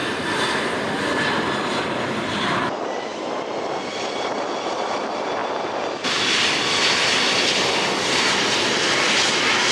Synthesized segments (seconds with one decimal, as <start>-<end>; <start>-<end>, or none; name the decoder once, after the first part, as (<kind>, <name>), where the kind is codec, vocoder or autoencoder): 1.3-3.1 (vocoder, BigVGAN v2); 3.8-9.7